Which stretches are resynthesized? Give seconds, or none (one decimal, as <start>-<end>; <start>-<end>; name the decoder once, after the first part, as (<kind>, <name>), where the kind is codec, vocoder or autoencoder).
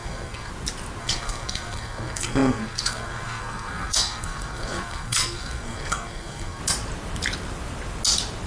0.0-0.5 (codec, SNAC); 1.0-6.6